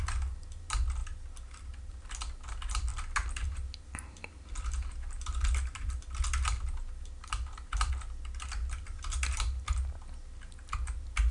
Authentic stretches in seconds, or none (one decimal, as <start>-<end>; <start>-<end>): 0.0-11.3